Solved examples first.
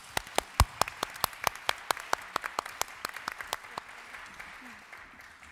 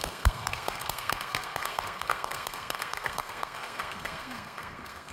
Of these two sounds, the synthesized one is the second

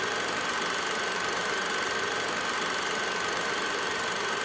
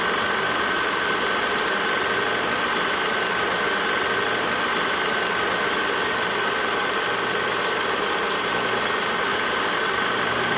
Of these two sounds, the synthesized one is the first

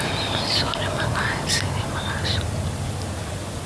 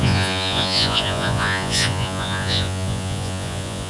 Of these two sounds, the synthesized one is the second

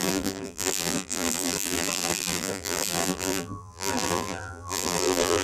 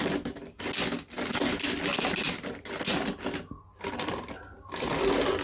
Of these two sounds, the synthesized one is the first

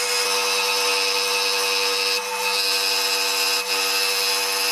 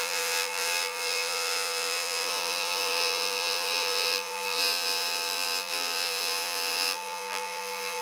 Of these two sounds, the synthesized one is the second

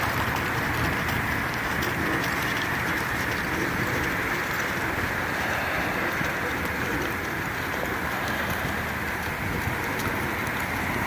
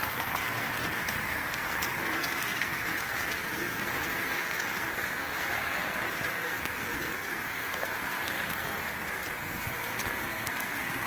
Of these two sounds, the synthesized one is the second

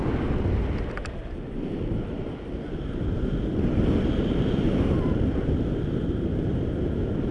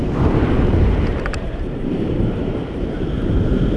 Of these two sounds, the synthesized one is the second